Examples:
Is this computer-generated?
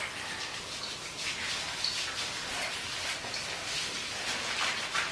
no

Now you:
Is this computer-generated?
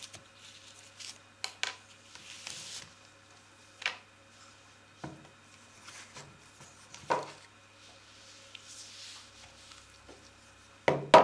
no